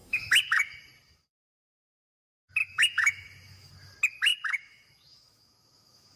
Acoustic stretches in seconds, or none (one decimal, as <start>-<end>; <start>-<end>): 0.6-2.6; 3.7-4.3